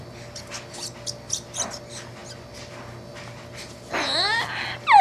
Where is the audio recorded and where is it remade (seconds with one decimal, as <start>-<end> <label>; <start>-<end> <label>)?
0.0-5.0 recorded